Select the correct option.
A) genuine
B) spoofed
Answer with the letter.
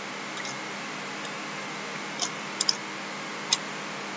A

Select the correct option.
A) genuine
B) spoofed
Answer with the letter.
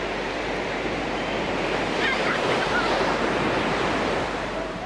B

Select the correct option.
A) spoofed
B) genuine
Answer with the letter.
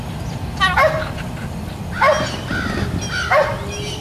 B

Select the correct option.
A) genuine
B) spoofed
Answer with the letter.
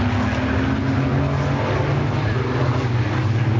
A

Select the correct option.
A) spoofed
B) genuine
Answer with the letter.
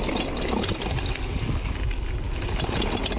B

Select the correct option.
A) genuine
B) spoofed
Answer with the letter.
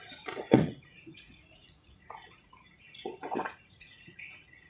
B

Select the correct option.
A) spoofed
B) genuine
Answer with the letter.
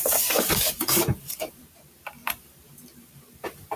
A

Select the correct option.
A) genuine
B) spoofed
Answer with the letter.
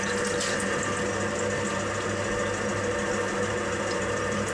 A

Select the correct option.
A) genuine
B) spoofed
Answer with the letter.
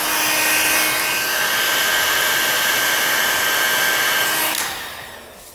A